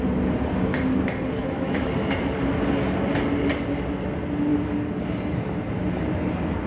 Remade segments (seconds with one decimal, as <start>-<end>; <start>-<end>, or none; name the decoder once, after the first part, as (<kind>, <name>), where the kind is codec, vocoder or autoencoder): 1.4-1.9 (autoencoder, DAC-VAE)